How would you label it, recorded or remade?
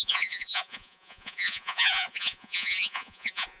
remade